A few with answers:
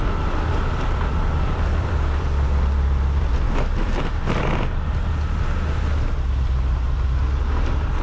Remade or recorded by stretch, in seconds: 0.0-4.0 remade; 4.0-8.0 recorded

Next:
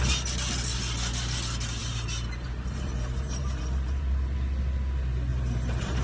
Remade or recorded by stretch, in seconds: 0.0-1.8 recorded; 1.8-4.0 remade; 4.0-5.3 recorded; 5.3-6.0 remade

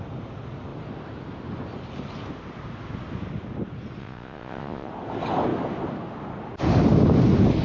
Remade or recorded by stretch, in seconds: 0.0-4.0 recorded; 4.0-4.9 remade; 4.9-7.6 recorded

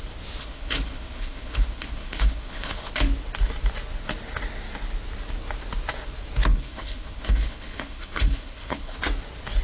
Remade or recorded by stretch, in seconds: 0.0-0.4 recorded; 0.4-2.9 remade; 2.9-6.5 recorded; 6.5-9.0 remade; 9.0-9.6 recorded

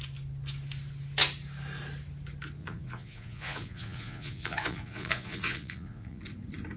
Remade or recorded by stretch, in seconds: 0.0-2.6 recorded; 2.6-6.2 remade; 6.2-6.8 recorded

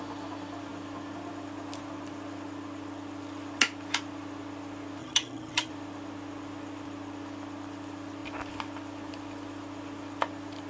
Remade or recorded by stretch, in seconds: 0.0-5.0 recorded; 5.0-5.7 remade; 5.7-10.7 recorded

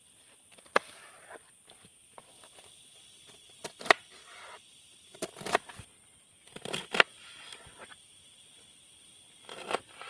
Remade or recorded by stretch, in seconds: 0.0-1.9 remade; 1.9-5.5 recorded; 5.5-7.1 remade; 7.1-8.5 recorded; 8.5-10.1 remade